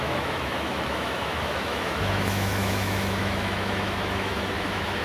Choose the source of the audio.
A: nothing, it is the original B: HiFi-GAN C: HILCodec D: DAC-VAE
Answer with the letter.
D